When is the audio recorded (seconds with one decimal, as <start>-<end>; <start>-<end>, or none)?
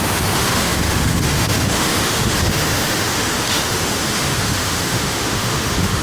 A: none